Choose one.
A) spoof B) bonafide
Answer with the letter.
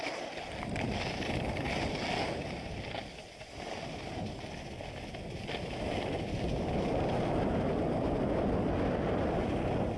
B